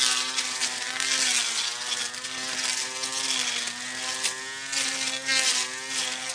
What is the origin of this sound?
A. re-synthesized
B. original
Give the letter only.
B